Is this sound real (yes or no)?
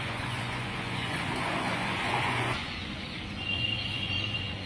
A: no